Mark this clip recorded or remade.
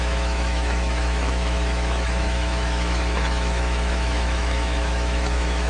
remade